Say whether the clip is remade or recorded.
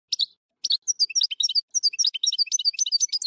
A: recorded